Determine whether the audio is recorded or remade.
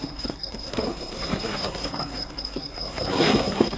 remade